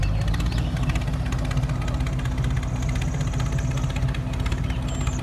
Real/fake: real